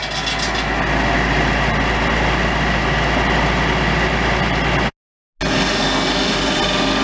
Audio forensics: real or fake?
real